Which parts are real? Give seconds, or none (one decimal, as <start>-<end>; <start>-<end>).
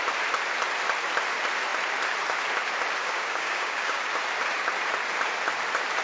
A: 0.0-3.0; 4.0-6.0